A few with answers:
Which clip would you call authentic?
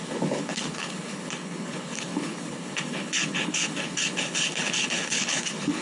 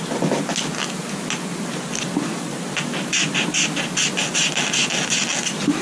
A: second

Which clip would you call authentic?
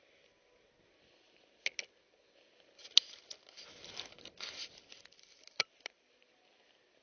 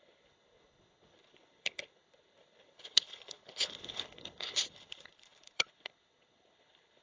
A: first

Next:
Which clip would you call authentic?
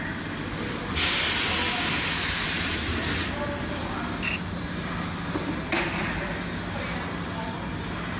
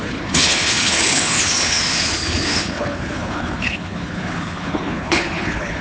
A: first